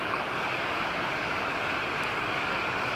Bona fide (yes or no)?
no